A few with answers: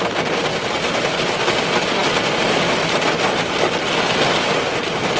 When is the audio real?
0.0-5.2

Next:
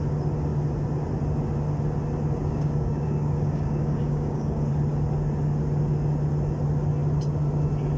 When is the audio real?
0.0-2.4; 4.7-8.0

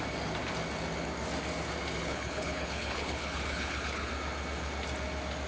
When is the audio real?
0.0-2.0; 4.1-5.5

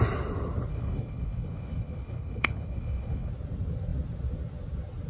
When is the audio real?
0.0-0.7; 3.3-5.1

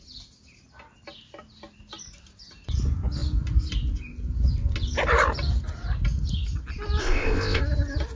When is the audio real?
0.0-7.0; 7.6-8.2

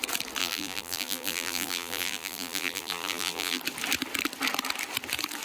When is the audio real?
0.0-0.4; 3.6-5.4

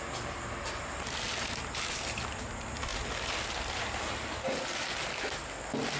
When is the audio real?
0.0-6.0

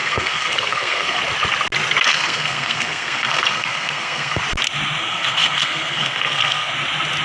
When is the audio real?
1.2-2.1; 4.4-5.0; 6.7-7.2